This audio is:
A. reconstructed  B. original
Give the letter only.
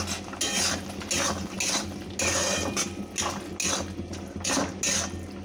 B